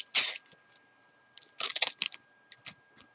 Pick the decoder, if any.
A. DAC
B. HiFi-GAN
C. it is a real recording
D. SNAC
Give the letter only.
C